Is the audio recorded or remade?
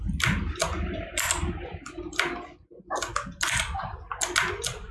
recorded